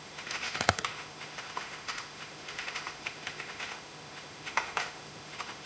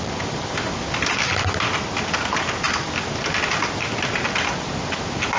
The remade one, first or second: first